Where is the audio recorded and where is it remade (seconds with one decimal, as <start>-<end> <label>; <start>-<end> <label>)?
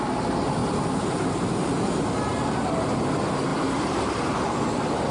0.0-0.6 recorded; 0.6-1.5 remade; 1.5-2.3 recorded; 2.3-3.1 remade; 3.1-3.5 recorded; 3.5-4.4 remade; 4.4-5.1 recorded